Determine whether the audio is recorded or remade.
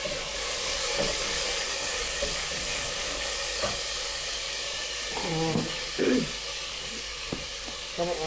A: remade